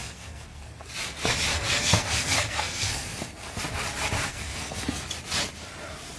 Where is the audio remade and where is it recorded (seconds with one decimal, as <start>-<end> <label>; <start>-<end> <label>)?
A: 0.0-0.9 remade; 0.9-1.5 recorded; 1.5-3.6 remade; 3.6-4.3 recorded; 4.3-5.0 remade; 5.0-6.2 recorded